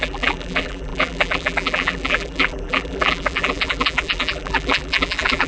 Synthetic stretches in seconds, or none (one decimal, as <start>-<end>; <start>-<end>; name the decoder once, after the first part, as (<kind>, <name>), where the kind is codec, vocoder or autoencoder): 0.0-5.5 (vocoder, BigVGAN v2)